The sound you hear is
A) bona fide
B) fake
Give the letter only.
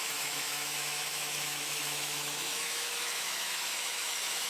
B